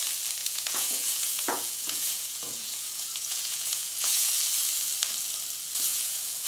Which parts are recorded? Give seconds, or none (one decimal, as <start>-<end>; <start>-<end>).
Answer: 0.0-0.4; 4.3-5.9

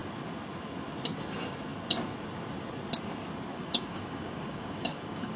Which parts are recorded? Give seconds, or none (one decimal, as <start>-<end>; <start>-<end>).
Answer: 0.0-3.5

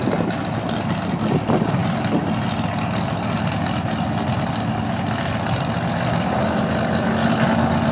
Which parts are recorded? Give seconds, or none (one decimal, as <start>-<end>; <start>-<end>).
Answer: 0.0-7.9